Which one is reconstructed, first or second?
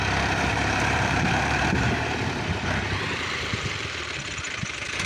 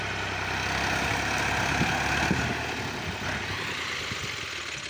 first